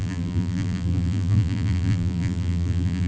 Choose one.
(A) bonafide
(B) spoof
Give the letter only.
B